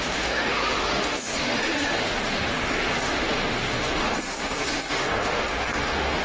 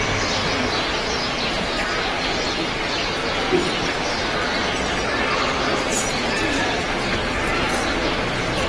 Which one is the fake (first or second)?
first